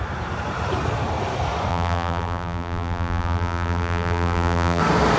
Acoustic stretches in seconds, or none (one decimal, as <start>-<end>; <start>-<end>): 0.0-1.7; 4.8-5.2